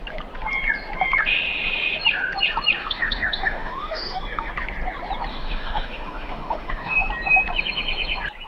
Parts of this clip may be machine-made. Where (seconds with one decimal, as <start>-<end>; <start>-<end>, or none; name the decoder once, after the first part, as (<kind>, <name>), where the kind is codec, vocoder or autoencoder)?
2.8-4.5 (autoencoder, DAC-VAE); 5.3-7.1

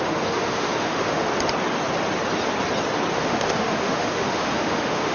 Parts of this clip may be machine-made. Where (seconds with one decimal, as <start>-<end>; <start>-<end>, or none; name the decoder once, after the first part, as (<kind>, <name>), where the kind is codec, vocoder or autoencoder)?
0.0-1.3 (autoencoder, DAC-VAE); 3.1-5.1